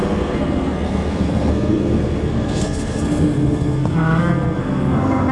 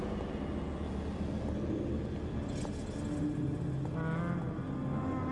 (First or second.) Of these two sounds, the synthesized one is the first